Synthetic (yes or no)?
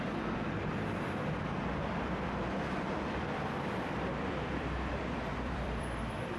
yes